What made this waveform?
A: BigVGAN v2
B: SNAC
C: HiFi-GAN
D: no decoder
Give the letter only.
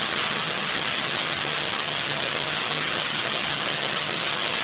C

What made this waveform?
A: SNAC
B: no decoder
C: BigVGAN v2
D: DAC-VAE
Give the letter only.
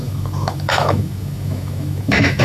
D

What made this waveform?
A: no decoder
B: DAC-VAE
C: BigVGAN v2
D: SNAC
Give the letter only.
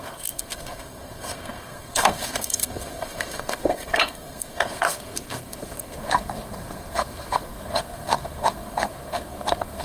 D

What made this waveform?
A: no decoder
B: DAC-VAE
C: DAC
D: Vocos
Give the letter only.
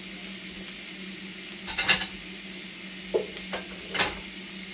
A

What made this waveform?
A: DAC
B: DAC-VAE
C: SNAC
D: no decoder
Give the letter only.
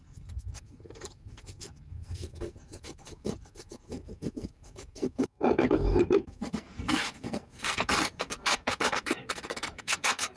C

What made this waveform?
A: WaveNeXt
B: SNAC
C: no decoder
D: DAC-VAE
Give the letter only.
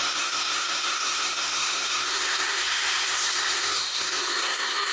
B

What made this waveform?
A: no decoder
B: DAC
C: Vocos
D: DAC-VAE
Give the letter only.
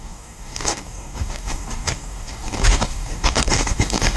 B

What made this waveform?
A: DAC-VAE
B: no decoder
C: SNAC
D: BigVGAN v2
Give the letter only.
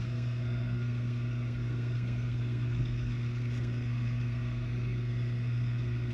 C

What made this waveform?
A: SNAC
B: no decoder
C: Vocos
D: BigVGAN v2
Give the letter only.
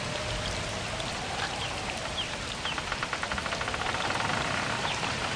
B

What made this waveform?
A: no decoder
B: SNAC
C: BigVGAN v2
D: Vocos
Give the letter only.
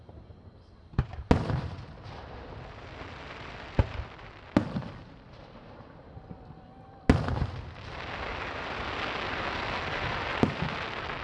A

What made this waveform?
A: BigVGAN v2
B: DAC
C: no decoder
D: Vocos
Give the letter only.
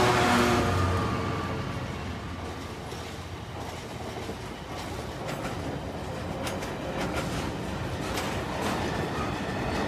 C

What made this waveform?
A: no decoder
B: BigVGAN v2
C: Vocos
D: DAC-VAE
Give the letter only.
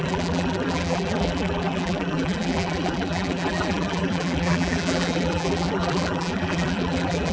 B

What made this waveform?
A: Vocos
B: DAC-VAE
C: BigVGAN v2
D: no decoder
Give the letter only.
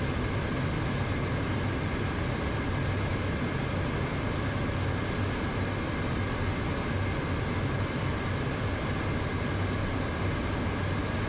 D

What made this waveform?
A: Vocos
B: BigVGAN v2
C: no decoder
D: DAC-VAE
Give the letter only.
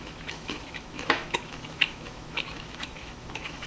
D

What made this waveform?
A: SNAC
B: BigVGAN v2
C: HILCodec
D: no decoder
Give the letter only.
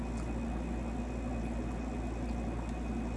D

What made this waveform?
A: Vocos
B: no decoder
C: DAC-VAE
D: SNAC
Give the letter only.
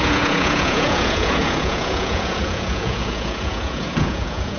A